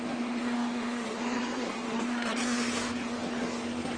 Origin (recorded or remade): remade